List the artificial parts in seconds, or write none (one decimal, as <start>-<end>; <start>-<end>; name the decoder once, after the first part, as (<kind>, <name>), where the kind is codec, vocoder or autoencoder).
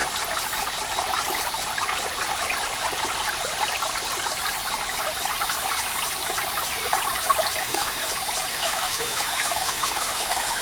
7.6-8.1 (autoencoder, DAC-VAE); 8.5-10.6